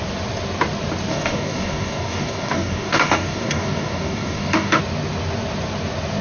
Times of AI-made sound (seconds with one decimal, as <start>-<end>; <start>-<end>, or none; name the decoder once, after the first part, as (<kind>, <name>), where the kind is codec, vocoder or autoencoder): 1.1-4.8 (codec, DAC)